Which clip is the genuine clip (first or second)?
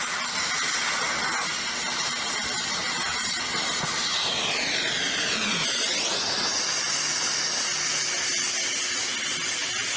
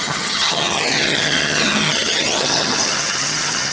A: first